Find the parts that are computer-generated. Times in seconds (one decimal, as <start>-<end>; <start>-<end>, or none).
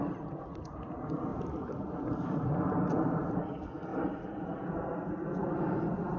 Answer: 1.3-3.1; 3.9-4.6; 5.4-6.2